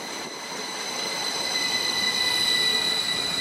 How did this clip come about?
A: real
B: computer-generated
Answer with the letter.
B